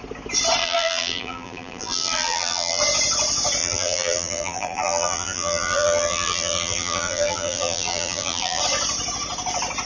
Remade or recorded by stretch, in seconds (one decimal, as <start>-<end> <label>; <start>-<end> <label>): 0.0-0.6 recorded; 0.6-2.8 remade; 2.8-3.6 recorded; 3.6-8.6 remade; 8.6-9.9 recorded